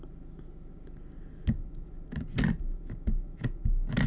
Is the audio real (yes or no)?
yes